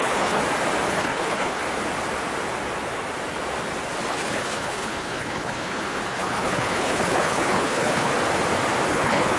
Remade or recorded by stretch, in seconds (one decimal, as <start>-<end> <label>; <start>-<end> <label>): 0.0-0.4 remade; 0.4-0.9 recorded; 0.9-1.6 remade; 1.6-4.1 recorded; 4.1-8.1 remade; 8.1-8.9 recorded; 8.9-9.4 remade